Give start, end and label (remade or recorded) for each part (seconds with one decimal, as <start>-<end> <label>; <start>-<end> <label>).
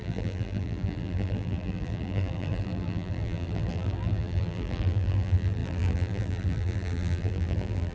0.0-7.9 remade